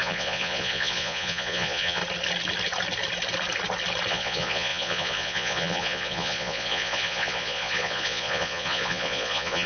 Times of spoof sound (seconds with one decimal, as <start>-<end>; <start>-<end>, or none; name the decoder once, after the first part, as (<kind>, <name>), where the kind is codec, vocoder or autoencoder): 0.0-2.0 (vocoder, Vocos); 4.1-9.7